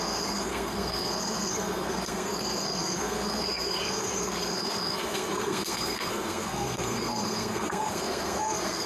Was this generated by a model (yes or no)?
yes